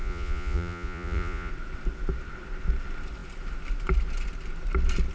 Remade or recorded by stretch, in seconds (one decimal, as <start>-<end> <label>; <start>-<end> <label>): 0.0-1.5 remade; 1.5-5.1 recorded